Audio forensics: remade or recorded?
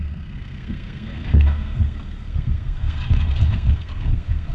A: remade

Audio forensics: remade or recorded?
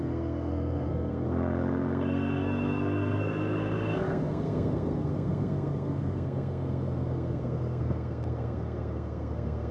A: remade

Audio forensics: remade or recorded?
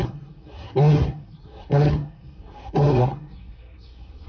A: remade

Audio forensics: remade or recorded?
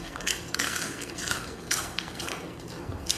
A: remade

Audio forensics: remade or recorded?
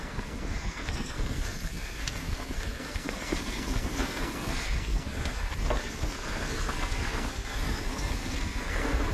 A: remade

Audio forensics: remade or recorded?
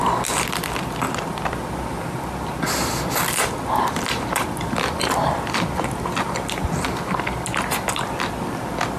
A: recorded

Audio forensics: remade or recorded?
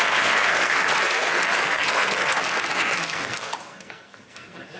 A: remade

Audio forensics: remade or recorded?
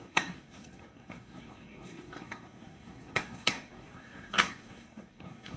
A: remade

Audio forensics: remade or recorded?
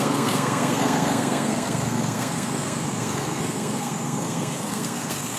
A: remade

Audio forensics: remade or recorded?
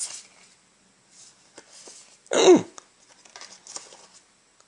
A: recorded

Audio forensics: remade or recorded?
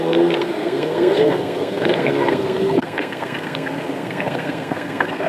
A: remade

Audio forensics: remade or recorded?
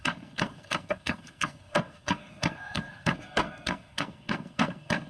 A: remade